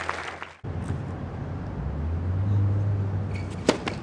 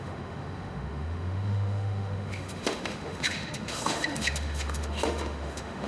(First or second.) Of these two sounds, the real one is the first